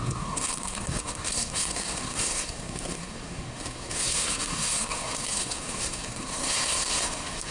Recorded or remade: remade